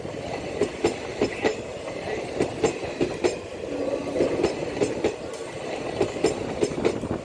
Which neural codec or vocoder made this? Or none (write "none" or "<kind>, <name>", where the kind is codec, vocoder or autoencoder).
none